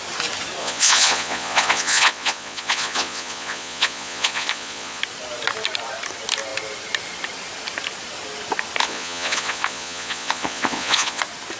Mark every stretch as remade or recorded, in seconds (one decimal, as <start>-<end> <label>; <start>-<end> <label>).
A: 0.0-0.6 recorded; 0.6-5.0 remade; 5.0-8.8 recorded; 8.8-11.2 remade; 11.2-11.6 recorded